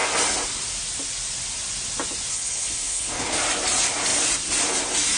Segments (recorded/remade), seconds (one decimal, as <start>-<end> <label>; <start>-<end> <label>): 0.0-2.3 recorded; 2.3-3.4 remade; 3.4-5.2 recorded